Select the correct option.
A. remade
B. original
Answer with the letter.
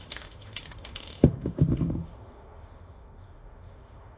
A